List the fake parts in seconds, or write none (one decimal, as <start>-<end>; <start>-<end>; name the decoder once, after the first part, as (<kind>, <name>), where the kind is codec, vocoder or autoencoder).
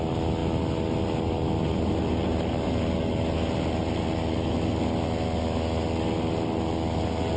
none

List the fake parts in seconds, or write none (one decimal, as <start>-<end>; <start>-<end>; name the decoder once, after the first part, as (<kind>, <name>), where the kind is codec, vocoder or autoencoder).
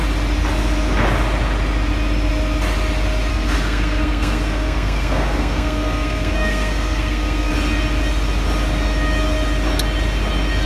3.3-7.5 (codec, SNAC)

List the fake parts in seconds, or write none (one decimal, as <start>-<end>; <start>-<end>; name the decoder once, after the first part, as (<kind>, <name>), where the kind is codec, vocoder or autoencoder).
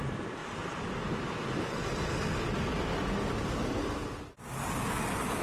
none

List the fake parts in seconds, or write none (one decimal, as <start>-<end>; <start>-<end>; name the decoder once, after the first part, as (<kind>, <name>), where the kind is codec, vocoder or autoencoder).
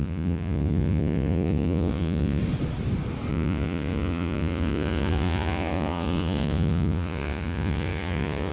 0.0-2.4 (vocoder, Vocos); 3.3-8.5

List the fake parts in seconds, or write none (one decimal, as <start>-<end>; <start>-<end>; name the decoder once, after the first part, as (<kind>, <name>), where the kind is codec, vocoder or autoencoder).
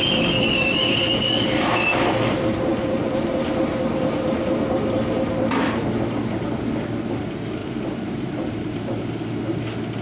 7.6-8.8 (vocoder, BigVGAN v2)